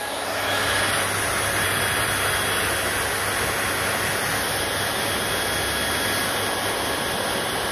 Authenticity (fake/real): real